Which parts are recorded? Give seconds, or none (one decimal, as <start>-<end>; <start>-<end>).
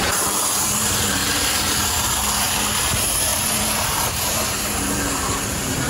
1.2-2.8